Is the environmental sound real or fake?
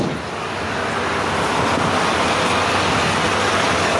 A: real